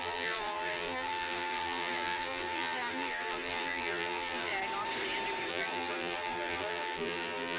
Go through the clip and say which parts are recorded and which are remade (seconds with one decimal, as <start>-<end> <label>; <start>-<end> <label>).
0.0-4.5 remade; 4.5-5.5 recorded; 5.5-7.6 remade